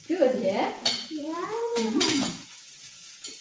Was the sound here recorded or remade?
remade